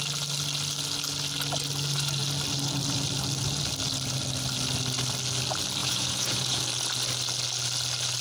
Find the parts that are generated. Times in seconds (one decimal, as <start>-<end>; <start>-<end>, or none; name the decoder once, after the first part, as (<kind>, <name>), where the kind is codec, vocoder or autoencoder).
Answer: 5.8-6.6 (vocoder, Vocos)

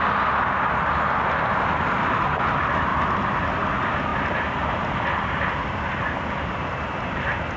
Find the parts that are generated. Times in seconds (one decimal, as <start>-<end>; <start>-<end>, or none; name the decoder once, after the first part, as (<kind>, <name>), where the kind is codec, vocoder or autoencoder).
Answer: none

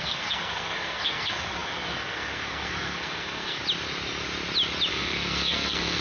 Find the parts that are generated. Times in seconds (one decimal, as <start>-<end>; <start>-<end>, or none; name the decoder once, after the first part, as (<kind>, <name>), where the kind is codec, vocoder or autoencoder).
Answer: 0.0-3.6 (codec, SNAC); 4.9-6.0

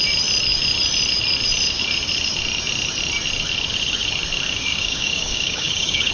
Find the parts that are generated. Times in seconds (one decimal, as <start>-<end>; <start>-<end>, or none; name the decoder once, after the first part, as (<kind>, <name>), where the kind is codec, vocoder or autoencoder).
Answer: 4.7-6.1 (codec, DAC)

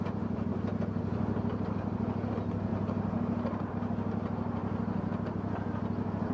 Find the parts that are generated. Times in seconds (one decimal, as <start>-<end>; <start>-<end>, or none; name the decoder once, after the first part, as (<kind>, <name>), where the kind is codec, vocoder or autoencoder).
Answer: 0.5-2.3 (vocoder, BigVGAN v2); 2.7-3.7

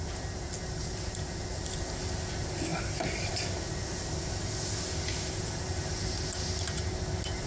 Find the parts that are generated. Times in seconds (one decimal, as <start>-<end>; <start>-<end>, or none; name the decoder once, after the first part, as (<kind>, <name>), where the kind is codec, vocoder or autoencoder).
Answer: none

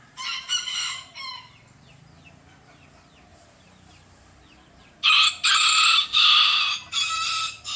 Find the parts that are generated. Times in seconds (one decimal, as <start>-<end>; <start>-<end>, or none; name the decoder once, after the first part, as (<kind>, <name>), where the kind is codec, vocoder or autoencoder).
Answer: 3.3-5.6 (vocoder, BigVGAN v2)